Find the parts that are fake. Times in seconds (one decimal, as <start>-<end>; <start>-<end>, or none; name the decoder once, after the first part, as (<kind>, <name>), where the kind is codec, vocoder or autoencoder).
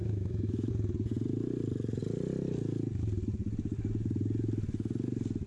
0.0-0.7 (autoencoder, DAC-VAE)